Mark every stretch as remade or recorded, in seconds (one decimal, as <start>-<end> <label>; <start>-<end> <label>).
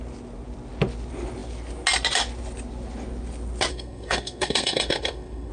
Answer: 0.0-3.7 recorded; 3.7-5.5 remade